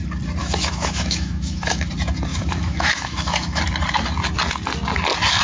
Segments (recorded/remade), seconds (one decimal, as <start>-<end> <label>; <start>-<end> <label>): 0.0-0.4 recorded; 0.4-1.9 remade; 1.9-2.3 recorded; 2.3-3.6 remade; 3.6-5.4 recorded